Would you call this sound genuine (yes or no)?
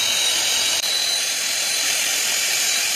no